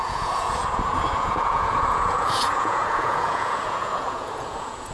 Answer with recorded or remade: remade